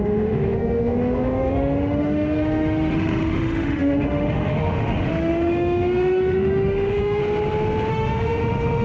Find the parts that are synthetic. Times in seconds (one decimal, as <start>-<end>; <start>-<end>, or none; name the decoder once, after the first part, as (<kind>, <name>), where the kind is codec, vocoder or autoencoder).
0.0-7.2 (autoencoder, DAC-VAE); 7.9-8.8